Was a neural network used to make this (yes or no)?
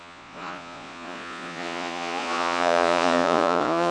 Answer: yes